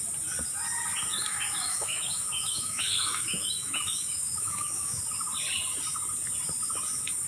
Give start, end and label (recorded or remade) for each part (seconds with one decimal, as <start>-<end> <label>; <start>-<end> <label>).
0.0-1.1 recorded; 1.1-5.0 remade; 5.0-7.3 recorded